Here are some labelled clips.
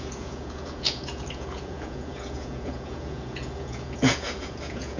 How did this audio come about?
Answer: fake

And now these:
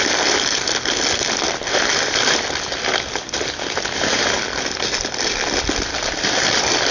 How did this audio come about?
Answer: real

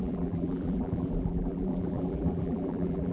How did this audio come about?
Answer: fake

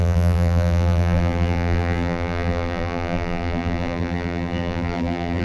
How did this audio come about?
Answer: fake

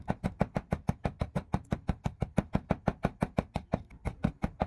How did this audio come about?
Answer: real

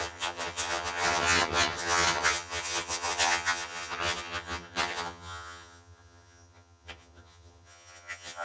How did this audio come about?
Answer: fake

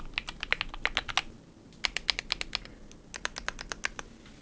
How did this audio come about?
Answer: real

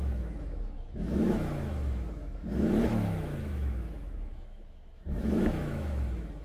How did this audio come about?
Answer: fake